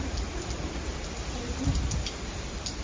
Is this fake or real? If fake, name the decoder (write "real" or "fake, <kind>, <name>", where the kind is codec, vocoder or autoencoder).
fake, vocoder, BigVGAN v2